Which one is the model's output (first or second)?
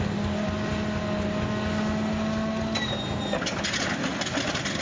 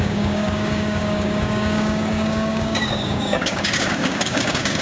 second